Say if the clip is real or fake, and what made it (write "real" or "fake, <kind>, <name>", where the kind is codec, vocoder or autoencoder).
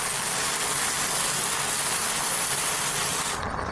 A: real